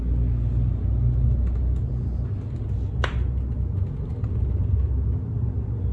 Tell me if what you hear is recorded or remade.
recorded